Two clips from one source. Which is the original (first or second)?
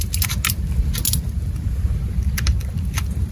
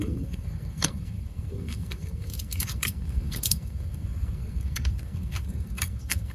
first